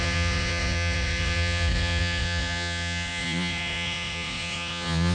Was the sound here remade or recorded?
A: remade